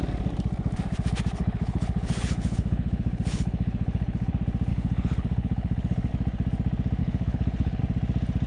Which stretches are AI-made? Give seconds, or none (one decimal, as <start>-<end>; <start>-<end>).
1.4-4.3; 4.7-6.1; 7.0-7.8